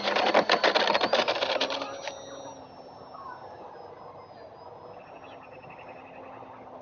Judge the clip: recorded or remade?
recorded